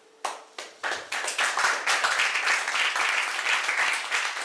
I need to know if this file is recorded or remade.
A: recorded